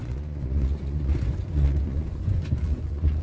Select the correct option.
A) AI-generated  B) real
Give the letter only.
A